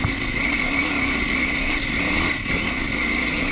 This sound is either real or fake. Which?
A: real